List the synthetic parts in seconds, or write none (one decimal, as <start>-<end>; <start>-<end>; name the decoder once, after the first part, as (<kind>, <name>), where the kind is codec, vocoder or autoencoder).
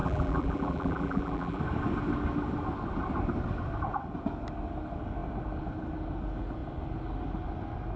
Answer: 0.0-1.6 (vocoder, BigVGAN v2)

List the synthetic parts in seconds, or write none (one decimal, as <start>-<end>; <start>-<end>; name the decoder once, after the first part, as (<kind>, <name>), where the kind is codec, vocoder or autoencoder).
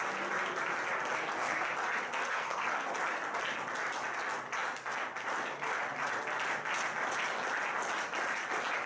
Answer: 1.1-1.7 (codec, SNAC); 2.1-2.9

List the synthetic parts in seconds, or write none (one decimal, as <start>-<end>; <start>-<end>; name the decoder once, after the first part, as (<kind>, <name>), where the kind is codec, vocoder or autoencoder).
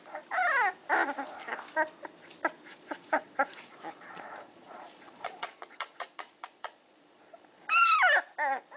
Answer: 2.7-7.6 (vocoder, Vocos)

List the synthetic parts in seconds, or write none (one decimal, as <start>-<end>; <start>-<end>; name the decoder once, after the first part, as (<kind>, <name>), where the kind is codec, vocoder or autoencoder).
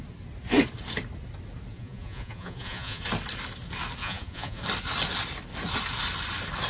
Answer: 1.7-3.0 (vocoder, Vocos); 4.0-4.6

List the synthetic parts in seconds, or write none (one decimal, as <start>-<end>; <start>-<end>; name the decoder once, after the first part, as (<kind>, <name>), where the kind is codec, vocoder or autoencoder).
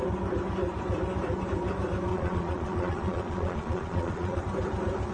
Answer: 2.1-4.4 (vocoder, Vocos)